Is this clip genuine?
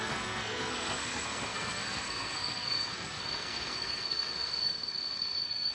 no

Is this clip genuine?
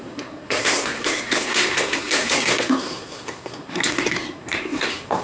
no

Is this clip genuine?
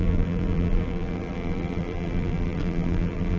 no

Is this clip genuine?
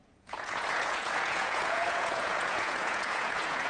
no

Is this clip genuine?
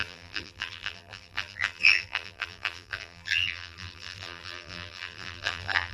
no